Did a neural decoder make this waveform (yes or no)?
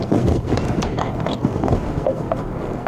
yes